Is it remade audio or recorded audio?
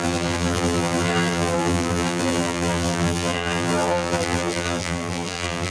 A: remade